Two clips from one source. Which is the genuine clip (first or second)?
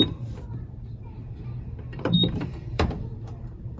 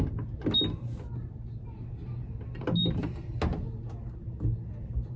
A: second